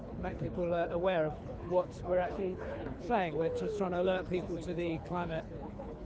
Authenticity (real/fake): fake